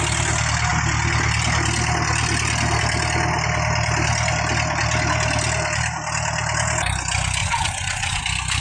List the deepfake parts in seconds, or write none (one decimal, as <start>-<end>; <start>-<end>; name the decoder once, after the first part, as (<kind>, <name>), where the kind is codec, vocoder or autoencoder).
7.4-8.2 (vocoder, Vocos)